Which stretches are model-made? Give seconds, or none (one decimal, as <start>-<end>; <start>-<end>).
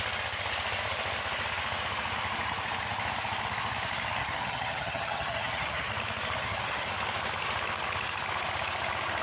4.2-5.9; 6.4-6.9